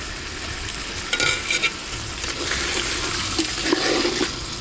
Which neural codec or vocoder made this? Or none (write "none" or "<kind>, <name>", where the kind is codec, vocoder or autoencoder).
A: none